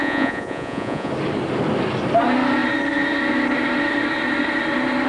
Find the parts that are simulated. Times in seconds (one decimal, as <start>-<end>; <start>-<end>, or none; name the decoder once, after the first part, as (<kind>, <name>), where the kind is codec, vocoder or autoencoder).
0.0-1.1 (vocoder, Vocos)